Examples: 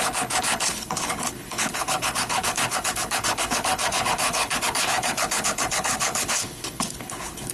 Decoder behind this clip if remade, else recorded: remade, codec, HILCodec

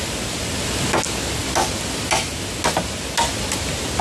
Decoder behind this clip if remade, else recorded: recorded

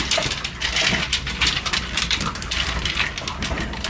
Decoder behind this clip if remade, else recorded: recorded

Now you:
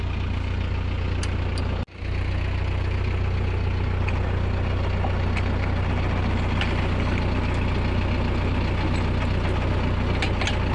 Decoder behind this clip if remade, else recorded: recorded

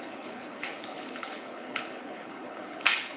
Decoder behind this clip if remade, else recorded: remade, codec, HILCodec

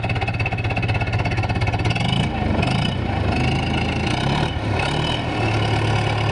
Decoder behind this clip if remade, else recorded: recorded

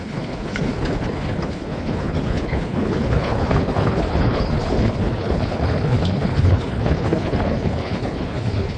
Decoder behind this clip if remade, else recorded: remade, codec, HILCodec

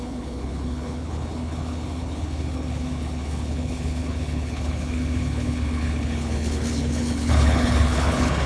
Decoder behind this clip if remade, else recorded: remade, codec, HILCodec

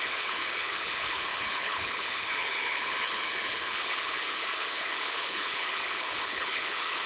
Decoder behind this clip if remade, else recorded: remade, codec, HILCodec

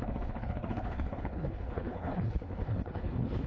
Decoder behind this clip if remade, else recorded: remade, codec, HILCodec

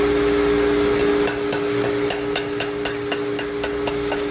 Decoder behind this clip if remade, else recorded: recorded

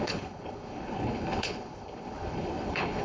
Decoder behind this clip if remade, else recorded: remade, codec, HILCodec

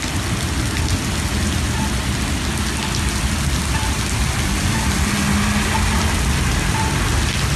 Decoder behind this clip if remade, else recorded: recorded